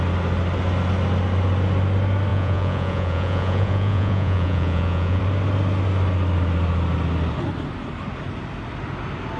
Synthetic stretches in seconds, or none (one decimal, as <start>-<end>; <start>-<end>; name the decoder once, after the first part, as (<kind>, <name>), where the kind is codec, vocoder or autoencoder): 2.3-5.2 (vocoder, Vocos)